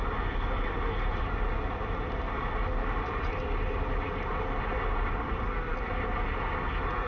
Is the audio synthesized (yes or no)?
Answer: no